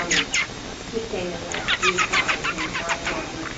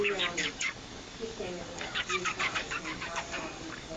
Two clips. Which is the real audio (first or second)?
first